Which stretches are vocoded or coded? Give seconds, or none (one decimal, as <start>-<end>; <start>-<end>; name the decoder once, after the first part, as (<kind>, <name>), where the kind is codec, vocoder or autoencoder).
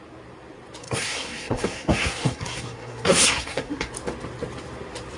0.8-3.9 (codec, SNAC)